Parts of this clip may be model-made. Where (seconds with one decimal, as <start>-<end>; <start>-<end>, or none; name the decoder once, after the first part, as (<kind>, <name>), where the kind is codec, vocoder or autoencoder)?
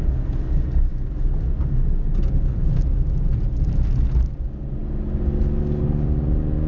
none